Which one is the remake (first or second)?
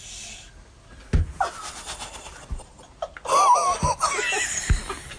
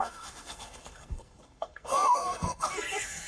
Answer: second